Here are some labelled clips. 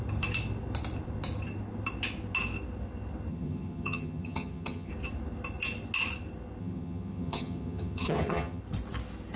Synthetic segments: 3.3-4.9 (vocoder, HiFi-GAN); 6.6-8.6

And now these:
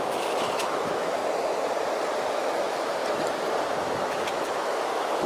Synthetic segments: 0.0-1.2 (autoencoder, DAC-VAE); 2.3-3.0; 3.8-5.3

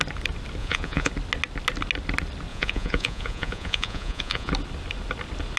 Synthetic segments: 0.6-1.1 (vocoder, Vocos); 2.5-4.5

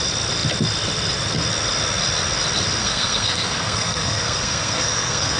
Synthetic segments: 2.8-5.4 (codec, SNAC)

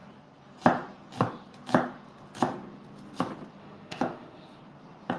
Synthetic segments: 3.6-4.6 (autoencoder, DAC-VAE)

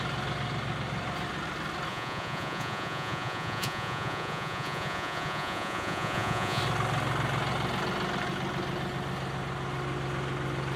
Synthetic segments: 1.9-6.6 (vocoder, Vocos)